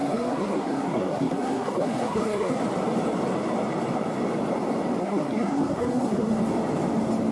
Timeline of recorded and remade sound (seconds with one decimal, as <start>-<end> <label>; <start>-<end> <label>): 0.0-2.6 remade; 2.6-5.0 recorded; 5.0-6.4 remade; 6.4-7.3 recorded